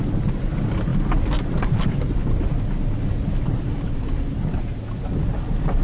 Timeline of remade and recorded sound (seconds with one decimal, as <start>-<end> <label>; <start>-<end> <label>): 0.0-5.8 recorded